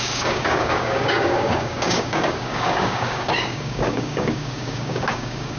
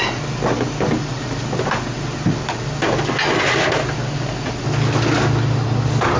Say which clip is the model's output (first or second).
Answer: first